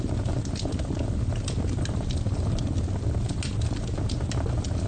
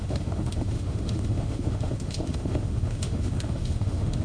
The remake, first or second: second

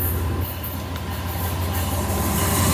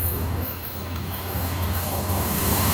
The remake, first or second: second